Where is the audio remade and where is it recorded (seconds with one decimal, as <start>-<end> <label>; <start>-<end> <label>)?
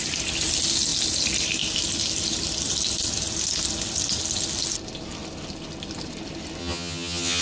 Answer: 0.0-6.6 recorded; 6.6-7.4 remade